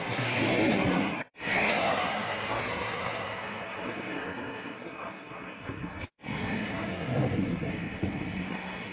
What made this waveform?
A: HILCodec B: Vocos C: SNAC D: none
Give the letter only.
C